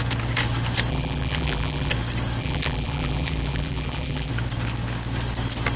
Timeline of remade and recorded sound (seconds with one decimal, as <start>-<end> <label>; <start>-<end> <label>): 0.0-0.9 recorded; 0.9-1.9 remade; 1.9-2.4 recorded; 2.4-4.3 remade; 4.3-5.8 recorded